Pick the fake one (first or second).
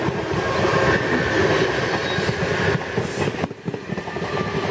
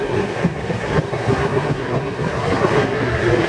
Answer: second